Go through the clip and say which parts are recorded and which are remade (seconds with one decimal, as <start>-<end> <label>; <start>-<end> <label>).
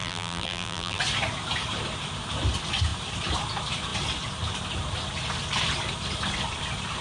0.0-1.0 remade; 1.0-7.0 recorded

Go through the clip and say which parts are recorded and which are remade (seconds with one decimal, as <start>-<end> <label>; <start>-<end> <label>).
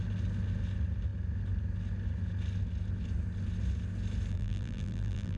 0.0-4.3 recorded; 4.3-5.4 remade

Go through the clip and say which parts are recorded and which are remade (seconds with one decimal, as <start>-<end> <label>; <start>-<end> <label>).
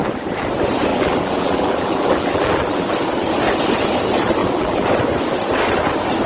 0.0-0.9 recorded; 0.9-2.9 remade; 2.9-4.4 recorded; 4.4-4.9 remade; 4.9-6.3 recorded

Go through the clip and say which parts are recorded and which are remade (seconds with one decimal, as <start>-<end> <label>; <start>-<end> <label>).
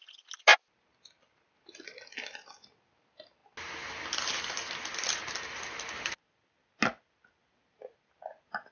0.0-8.7 recorded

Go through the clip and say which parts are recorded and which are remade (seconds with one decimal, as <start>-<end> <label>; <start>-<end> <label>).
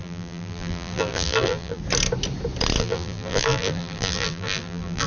0.0-1.8 remade; 1.8-2.8 recorded; 2.8-5.1 remade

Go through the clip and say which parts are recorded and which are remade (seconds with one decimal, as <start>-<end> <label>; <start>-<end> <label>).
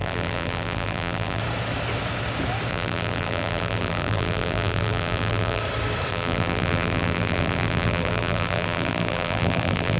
0.0-1.4 remade; 1.4-2.7 recorded; 2.7-5.6 remade; 5.6-6.1 recorded; 6.1-10.0 remade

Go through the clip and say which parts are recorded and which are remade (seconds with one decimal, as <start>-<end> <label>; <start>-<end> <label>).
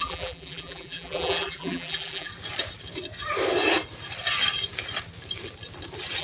0.0-2.3 remade; 2.3-6.2 recorded